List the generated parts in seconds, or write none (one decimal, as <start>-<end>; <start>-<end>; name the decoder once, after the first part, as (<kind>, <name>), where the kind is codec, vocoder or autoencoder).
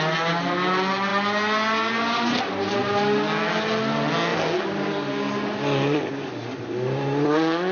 none